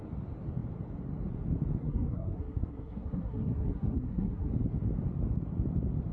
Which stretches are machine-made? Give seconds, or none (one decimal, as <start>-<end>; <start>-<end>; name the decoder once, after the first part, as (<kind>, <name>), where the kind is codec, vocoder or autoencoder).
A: 1.8-4.5 (codec, SNAC)